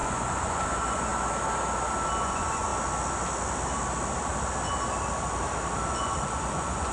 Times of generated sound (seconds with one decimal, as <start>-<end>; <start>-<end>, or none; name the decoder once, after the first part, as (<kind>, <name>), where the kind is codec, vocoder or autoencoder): 0.0-1.1 (vocoder, Vocos); 2.2-2.7; 5.9-6.9